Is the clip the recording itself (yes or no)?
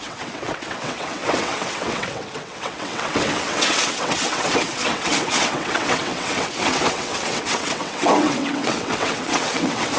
no